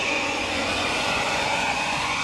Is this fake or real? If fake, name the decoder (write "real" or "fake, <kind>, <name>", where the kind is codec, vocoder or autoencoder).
fake, vocoder, Vocos